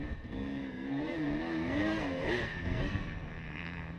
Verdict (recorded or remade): remade